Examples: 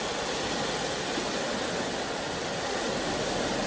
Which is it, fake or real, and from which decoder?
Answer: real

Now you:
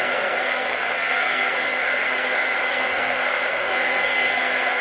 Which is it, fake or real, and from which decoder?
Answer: fake, codec, SNAC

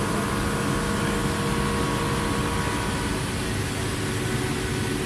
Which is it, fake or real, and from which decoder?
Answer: real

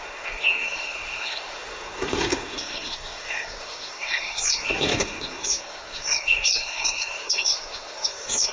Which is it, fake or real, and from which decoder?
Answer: fake, codec, SNAC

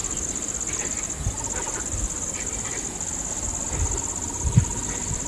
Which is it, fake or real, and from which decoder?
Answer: real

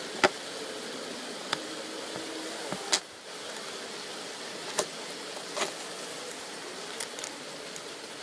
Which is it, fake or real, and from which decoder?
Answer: real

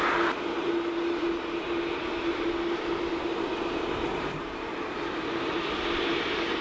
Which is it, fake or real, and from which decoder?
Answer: real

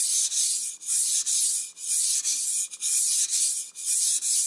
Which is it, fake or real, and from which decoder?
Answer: real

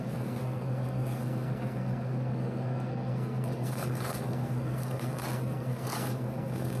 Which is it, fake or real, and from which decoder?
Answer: fake, codec, SNAC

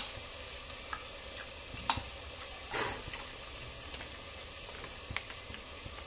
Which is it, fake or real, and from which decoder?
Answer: real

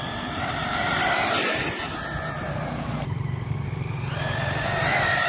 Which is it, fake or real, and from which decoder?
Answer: real